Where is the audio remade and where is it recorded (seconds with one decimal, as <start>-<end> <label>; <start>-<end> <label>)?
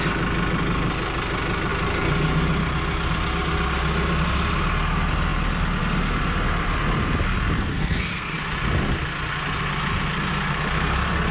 0.0-7.7 recorded; 7.7-8.3 remade; 8.3-11.3 recorded